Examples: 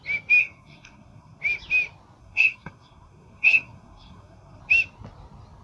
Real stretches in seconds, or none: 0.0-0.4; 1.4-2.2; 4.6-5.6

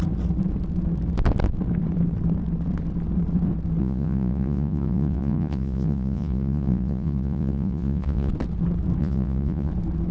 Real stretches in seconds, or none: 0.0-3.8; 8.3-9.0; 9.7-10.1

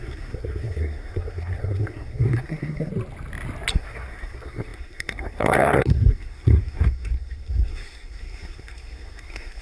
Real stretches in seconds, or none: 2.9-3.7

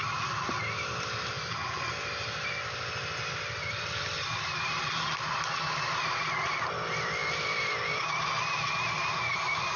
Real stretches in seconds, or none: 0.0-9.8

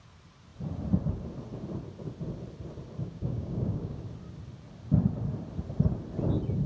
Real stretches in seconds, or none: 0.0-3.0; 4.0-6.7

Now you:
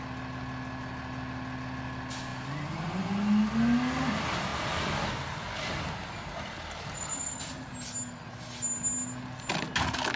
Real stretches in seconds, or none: 0.0-10.2

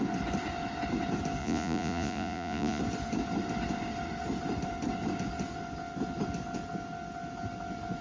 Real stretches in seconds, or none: 0.0-1.4; 2.8-8.0